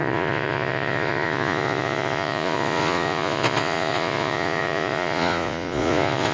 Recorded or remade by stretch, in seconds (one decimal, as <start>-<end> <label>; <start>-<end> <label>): 0.0-6.3 remade